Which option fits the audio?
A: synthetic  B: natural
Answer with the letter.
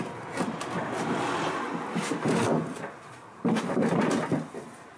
B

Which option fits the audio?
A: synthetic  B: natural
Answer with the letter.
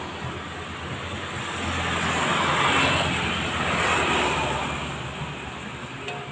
B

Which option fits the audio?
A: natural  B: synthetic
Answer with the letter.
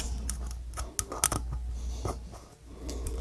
A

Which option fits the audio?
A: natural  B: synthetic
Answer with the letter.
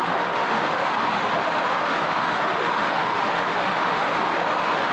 B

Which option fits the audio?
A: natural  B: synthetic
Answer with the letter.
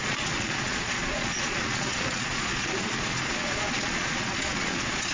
B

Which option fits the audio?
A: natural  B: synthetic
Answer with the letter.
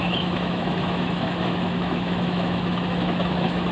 B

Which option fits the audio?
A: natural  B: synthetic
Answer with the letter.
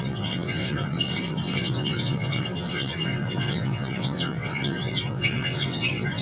B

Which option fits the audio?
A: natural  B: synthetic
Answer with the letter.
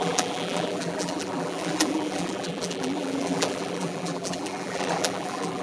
B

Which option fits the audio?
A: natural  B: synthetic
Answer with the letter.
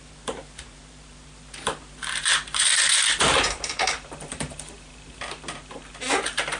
B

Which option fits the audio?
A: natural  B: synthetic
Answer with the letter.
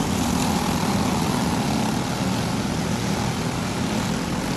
A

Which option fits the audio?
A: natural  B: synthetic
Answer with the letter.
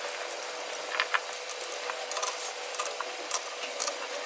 A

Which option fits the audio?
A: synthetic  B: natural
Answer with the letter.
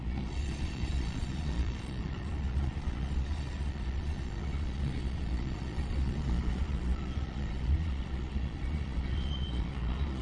A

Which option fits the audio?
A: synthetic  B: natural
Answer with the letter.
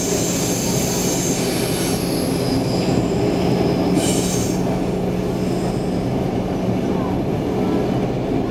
B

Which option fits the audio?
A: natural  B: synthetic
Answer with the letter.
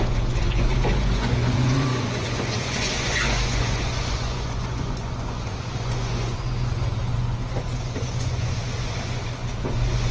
B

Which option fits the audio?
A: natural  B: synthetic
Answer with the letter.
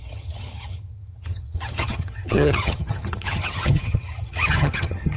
B